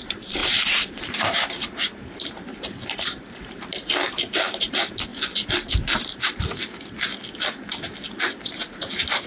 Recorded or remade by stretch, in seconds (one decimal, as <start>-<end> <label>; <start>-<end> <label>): 0.0-5.1 remade; 5.1-8.2 recorded; 8.2-9.3 remade